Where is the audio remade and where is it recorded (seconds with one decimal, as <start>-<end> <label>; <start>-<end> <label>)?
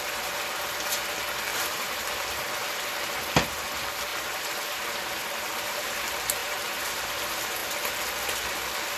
0.0-1.5 recorded; 1.5-2.1 remade; 2.1-4.1 recorded; 4.1-5.7 remade; 5.7-6.4 recorded; 6.4-7.1 remade; 7.1-9.0 recorded